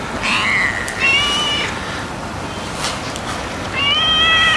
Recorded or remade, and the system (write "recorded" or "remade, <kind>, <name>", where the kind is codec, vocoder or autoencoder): recorded